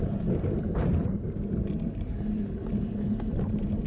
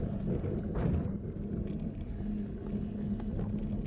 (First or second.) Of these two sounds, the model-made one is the first